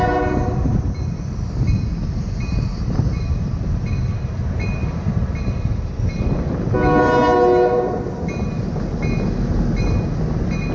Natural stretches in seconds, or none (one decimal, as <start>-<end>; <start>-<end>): 0.0-10.7

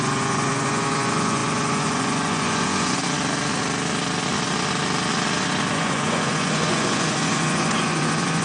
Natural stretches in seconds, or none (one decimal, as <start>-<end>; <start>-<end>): 3.0-5.7